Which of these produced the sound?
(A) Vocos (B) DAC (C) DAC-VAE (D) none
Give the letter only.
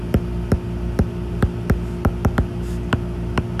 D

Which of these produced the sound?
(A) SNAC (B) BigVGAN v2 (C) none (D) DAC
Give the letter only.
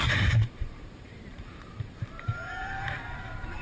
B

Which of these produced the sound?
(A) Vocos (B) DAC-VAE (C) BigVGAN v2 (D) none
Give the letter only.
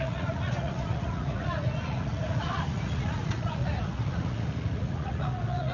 A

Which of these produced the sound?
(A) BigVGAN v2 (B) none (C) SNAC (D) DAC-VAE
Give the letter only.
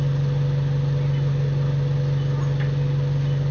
B